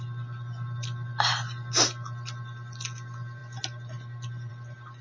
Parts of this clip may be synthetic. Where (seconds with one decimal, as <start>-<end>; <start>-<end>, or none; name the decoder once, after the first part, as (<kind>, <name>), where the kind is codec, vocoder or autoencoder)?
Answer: none